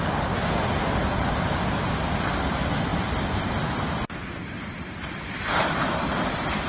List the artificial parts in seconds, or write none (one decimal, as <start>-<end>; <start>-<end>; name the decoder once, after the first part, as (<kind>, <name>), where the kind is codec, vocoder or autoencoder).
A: 0.8-1.5 (vocoder, BigVGAN v2); 2.9-3.5; 4.2-6.0